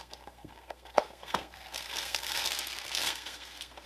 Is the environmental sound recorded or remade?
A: remade